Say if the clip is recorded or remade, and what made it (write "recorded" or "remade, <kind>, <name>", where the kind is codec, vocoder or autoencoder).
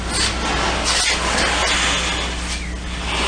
recorded